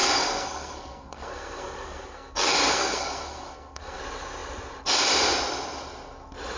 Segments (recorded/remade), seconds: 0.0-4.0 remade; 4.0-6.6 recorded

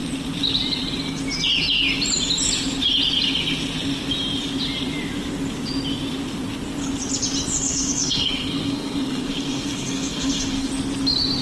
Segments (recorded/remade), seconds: 0.0-7.5 recorded; 7.5-10.7 remade; 10.7-11.4 recorded

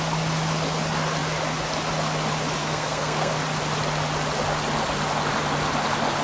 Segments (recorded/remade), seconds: 0.0-2.6 recorded; 2.6-3.3 remade; 3.3-6.2 recorded

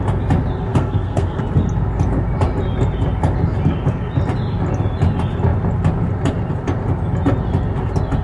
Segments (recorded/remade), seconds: 0.0-0.7 recorded; 0.7-1.4 remade; 1.4-8.2 recorded

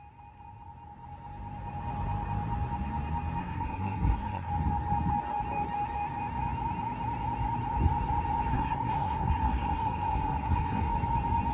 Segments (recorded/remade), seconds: 0.0-3.4 recorded; 3.4-4.5 remade; 4.5-8.5 recorded; 8.5-10.9 remade; 10.9-11.5 recorded